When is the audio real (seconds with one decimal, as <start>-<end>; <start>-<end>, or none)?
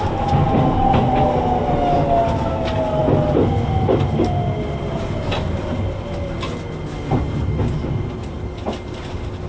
0.0-9.5